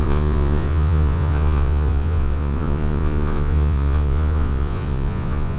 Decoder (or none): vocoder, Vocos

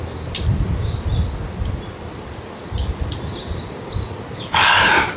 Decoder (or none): none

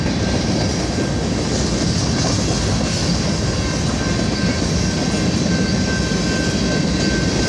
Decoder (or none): none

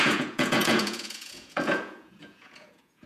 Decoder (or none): vocoder, Vocos